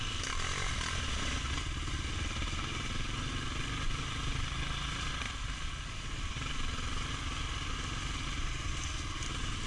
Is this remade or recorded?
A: recorded